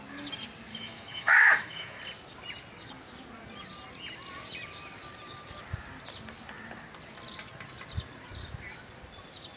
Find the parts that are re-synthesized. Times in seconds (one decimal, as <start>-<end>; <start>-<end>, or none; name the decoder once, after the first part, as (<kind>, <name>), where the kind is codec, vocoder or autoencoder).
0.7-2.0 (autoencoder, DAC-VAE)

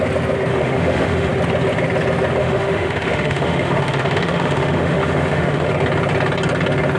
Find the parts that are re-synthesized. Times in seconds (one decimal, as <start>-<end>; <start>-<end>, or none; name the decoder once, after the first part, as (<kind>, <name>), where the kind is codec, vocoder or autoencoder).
0.5-1.3 (autoencoder, DAC-VAE); 2.4-5.7

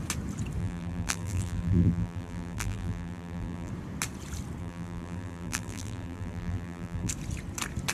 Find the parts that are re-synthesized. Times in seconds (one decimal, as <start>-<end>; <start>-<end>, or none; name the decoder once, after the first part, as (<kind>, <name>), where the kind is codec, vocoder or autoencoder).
0.6-3.7 (vocoder, BigVGAN v2); 4.6-7.1